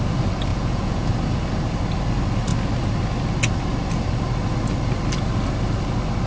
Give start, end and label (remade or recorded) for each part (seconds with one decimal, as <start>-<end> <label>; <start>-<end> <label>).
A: 0.0-0.5 recorded; 0.5-1.1 remade; 1.1-6.3 recorded